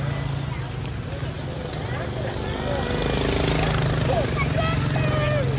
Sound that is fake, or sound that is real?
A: real